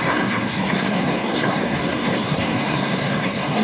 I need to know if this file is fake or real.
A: fake